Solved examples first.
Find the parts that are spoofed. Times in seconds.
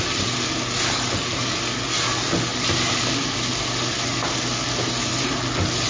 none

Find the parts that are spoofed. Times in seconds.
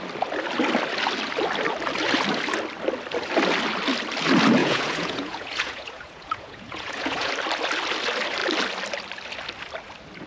4.6-7.3 (vocoder, Vocos)